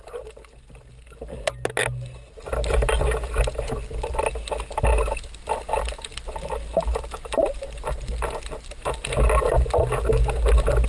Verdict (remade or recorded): recorded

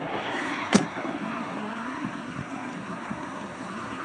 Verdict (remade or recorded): remade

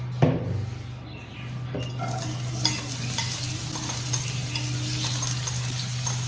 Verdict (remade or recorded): recorded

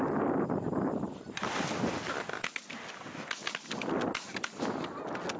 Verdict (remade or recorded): recorded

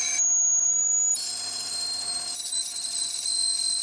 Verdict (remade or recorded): recorded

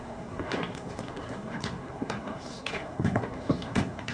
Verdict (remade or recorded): remade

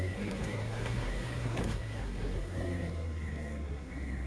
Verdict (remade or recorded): remade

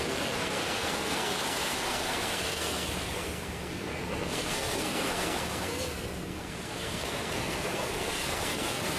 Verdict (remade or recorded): remade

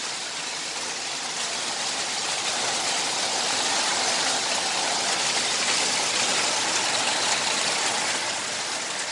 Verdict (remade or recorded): recorded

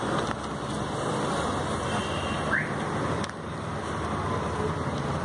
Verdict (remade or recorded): recorded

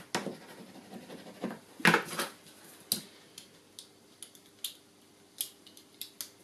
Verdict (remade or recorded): recorded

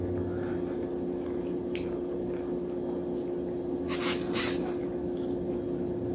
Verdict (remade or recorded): recorded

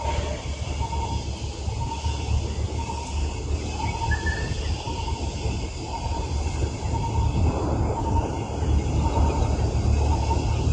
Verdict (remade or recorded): recorded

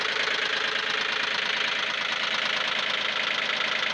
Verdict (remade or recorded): recorded